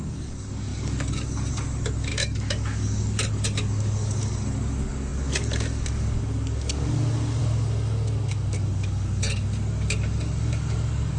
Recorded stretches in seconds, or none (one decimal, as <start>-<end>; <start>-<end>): none